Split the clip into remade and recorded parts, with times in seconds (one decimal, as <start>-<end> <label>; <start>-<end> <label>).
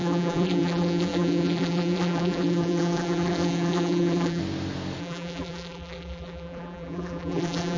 0.0-4.4 remade; 4.4-5.0 recorded; 5.0-7.8 remade